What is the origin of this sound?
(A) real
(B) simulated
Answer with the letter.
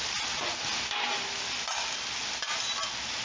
A